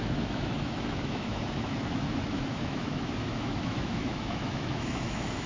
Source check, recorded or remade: remade